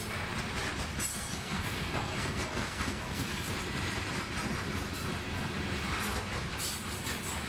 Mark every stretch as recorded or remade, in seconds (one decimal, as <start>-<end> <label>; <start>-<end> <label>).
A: 0.0-1.1 recorded; 1.1-3.5 remade; 3.5-7.5 recorded